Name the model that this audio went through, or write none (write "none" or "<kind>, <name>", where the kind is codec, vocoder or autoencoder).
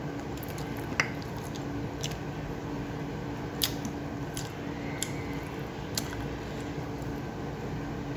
none